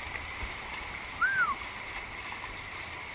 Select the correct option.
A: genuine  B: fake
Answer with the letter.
A